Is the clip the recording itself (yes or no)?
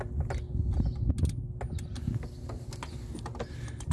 yes